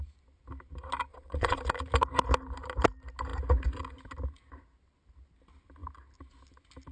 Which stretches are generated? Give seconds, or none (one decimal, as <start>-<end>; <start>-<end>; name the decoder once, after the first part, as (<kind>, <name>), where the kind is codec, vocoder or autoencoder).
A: 1.1-1.6 (vocoder, Vocos)